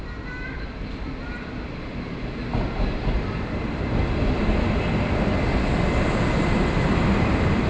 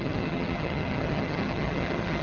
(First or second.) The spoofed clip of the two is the second